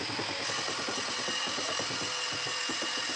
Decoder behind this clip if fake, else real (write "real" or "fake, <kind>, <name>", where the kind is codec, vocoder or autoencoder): real